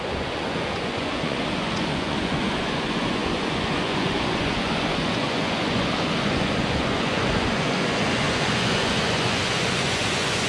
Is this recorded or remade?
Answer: remade